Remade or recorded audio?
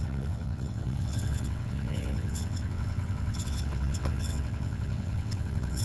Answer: remade